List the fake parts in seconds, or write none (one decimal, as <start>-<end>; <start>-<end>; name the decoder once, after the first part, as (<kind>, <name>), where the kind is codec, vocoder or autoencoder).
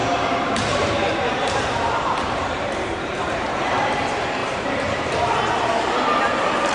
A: 0.0-4.0 (vocoder, BigVGAN v2); 4.4-5.3